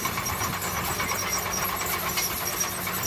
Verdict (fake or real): real